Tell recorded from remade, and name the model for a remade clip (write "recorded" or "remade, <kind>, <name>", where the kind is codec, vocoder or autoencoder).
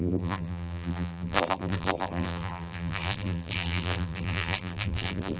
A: remade, vocoder, BigVGAN v2